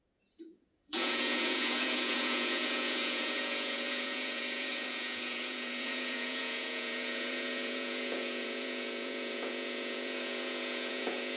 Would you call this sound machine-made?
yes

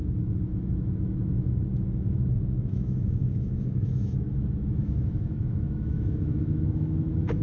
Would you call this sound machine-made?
yes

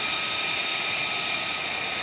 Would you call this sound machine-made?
no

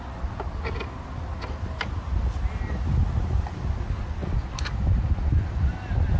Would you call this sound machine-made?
no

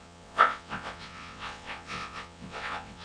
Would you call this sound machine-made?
yes